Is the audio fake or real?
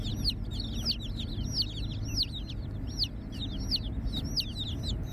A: real